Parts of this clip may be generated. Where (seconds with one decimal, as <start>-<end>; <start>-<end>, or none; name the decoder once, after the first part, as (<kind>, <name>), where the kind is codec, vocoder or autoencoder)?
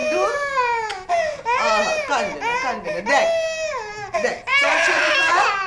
4.5-5.3 (vocoder, BigVGAN v2)